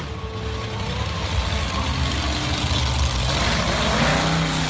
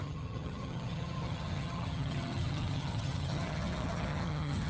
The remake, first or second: second